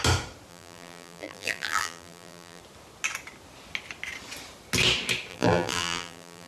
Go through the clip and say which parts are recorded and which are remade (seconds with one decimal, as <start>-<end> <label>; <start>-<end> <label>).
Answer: 0.0-0.5 recorded; 0.5-2.6 remade; 2.6-5.3 recorded; 5.3-6.5 remade